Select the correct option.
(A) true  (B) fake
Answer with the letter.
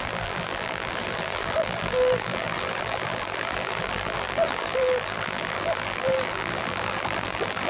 B